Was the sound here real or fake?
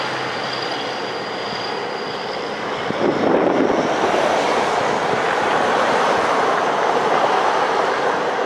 real